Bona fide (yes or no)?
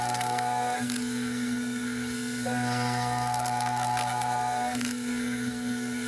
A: no